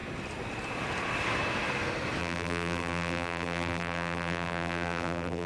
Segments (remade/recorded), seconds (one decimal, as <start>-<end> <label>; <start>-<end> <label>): 0.0-2.2 recorded; 2.2-5.5 remade